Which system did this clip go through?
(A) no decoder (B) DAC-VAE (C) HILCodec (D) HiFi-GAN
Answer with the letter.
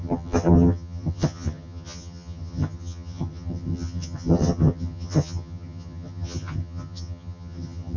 D